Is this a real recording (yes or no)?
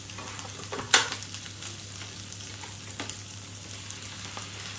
yes